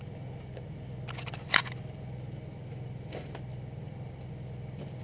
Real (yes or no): yes